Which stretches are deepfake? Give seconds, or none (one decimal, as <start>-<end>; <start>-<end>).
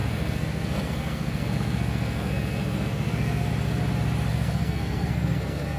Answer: 0.0-3.5; 4.3-5.8